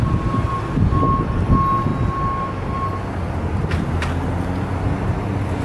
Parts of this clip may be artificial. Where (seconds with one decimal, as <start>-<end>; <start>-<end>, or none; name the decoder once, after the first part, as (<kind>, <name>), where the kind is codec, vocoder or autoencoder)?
none